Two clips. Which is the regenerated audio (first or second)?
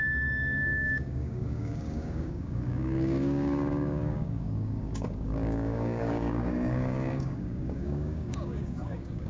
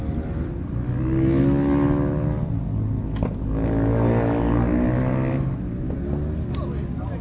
first